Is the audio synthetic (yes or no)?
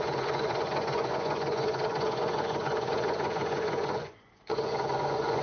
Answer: yes